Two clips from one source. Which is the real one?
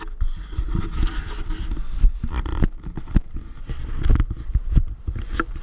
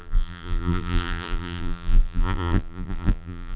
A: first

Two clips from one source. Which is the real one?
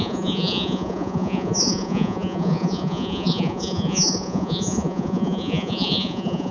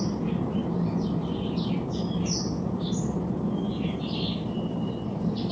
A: second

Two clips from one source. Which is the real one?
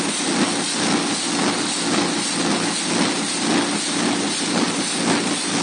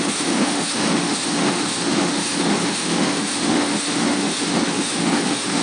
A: first